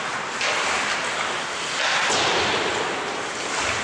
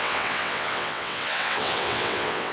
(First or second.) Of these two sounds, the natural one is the first